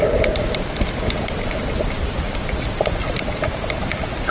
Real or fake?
real